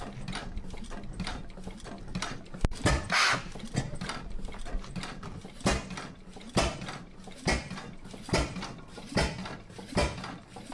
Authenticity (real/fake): real